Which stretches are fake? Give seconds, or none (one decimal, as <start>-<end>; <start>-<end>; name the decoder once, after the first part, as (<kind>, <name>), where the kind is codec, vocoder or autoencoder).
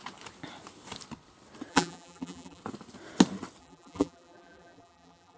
1.7-2.6 (vocoder, BigVGAN v2); 3.6-5.4